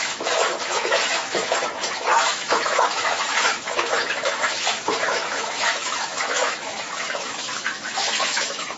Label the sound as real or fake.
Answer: fake